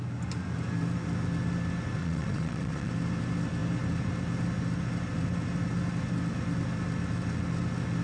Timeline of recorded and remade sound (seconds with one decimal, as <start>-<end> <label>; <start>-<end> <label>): 0.0-2.0 recorded; 2.0-2.9 remade; 2.9-8.0 recorded